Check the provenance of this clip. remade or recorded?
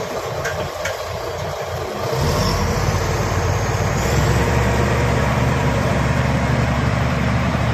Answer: remade